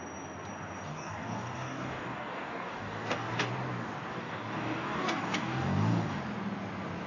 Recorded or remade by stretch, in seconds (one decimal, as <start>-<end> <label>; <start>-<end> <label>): 0.0-0.9 recorded; 0.9-3.5 remade; 3.5-4.1 recorded; 4.1-6.2 remade; 6.2-7.1 recorded